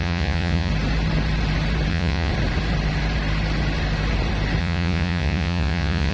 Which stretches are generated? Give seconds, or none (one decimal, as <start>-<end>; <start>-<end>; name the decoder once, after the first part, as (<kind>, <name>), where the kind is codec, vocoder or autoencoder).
0.0-0.7 (vocoder, Vocos); 1.9-2.3; 4.6-6.1